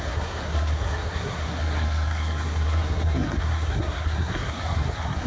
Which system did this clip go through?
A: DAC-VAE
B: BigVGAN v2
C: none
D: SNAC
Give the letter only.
D